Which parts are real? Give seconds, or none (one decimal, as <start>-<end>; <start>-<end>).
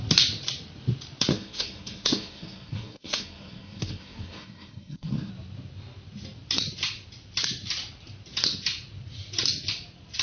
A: 0.0-1.3; 5.3-10.2